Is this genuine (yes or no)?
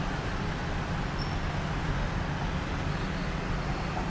yes